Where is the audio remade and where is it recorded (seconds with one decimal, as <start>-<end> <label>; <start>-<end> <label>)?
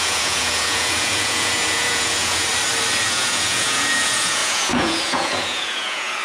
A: 0.0-2.5 remade; 2.5-3.0 recorded; 3.0-6.2 remade